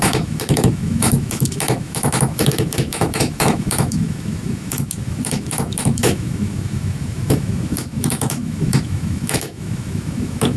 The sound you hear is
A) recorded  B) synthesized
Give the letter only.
B